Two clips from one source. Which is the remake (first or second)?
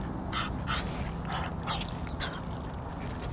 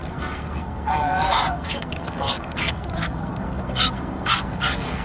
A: second